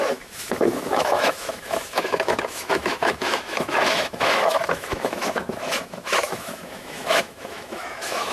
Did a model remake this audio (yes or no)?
yes